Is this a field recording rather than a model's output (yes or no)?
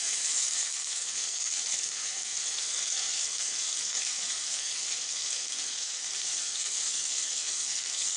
no